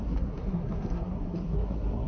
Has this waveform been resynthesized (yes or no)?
yes